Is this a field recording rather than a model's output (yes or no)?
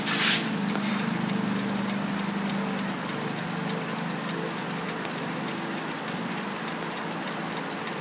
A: yes